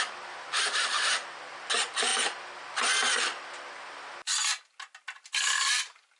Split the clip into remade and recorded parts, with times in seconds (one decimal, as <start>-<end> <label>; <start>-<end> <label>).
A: 0.0-6.2 recorded